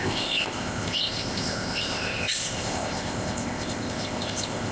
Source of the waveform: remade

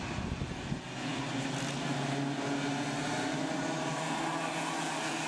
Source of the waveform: recorded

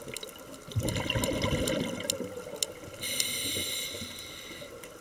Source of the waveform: recorded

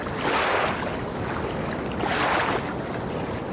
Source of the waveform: recorded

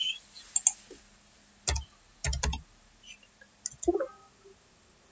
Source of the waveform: recorded